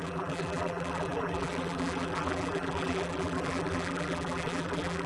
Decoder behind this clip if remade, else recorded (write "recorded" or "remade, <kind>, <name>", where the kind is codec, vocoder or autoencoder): remade, vocoder, BigVGAN v2